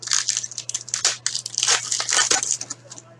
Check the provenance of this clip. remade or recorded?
recorded